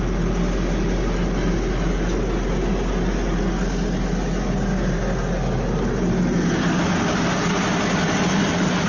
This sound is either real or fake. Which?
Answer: real